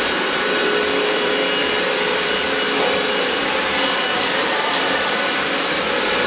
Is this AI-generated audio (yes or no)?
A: yes